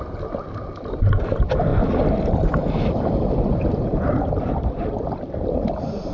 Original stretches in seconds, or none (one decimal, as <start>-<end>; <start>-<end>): 0.0-1.7; 4.8-6.1